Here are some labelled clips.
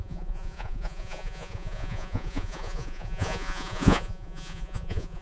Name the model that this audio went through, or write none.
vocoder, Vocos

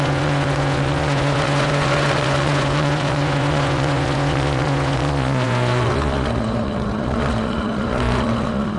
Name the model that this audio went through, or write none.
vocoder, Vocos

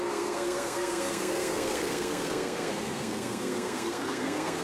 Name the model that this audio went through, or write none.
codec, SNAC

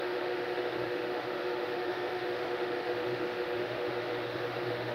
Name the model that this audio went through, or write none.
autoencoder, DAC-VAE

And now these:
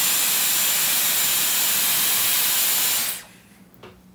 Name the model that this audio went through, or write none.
none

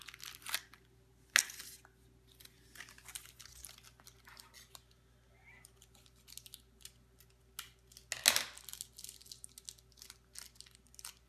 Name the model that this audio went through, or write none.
none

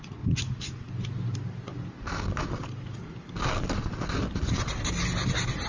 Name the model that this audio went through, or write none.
none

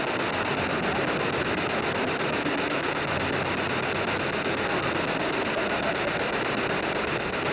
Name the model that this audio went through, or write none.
none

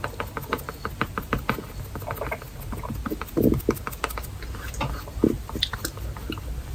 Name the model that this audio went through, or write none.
none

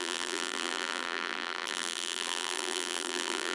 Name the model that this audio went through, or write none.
vocoder, BigVGAN v2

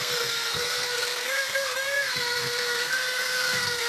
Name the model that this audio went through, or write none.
codec, SNAC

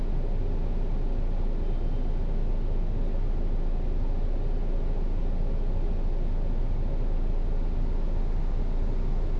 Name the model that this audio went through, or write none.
none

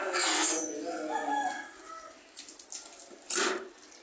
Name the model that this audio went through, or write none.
none